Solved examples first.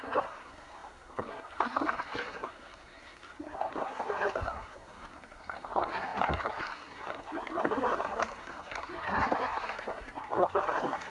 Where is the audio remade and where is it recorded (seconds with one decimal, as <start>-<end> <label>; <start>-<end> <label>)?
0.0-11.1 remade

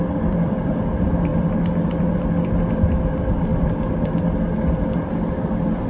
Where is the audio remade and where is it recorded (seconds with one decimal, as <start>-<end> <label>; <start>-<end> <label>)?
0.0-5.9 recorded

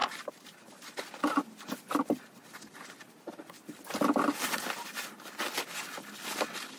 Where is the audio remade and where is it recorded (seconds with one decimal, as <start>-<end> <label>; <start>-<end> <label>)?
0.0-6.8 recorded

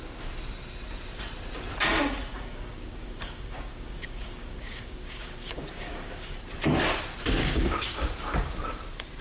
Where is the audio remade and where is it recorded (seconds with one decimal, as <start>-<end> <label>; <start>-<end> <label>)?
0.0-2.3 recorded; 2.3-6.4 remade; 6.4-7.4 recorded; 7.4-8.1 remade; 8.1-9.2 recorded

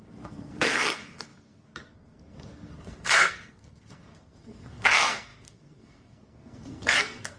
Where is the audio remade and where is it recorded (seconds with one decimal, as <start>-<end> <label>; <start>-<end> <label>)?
0.0-7.4 remade

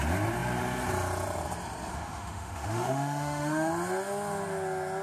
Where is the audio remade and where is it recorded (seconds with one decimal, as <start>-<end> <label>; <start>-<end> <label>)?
0.0-1.9 recorded; 1.9-3.7 remade; 3.7-5.0 recorded